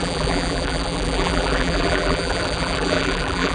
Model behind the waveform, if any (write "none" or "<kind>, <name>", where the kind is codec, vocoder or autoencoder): vocoder, BigVGAN v2